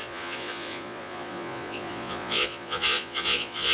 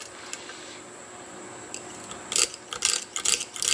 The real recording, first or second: second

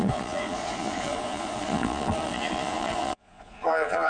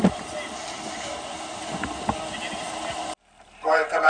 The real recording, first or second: second